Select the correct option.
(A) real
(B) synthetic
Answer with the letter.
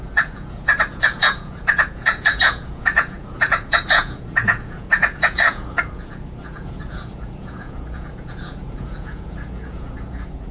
B